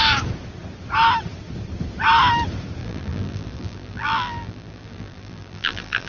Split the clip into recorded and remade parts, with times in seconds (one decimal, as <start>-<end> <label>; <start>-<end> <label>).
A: 0.0-2.8 recorded; 2.8-6.1 remade